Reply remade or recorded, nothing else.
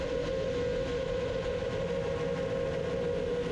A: recorded